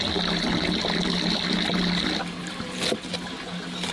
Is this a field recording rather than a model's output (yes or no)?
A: yes